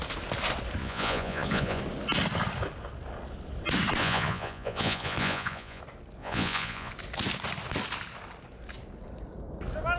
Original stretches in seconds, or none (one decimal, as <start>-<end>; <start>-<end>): 0.0-0.8; 1.8-4.0; 5.8-6.2; 6.9-10.0